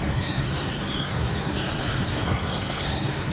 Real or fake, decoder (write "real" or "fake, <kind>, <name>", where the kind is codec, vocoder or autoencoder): fake, codec, SNAC